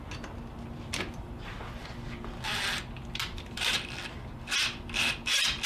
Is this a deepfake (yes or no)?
no